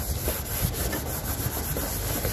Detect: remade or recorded recorded